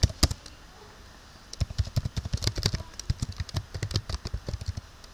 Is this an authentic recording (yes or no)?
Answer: yes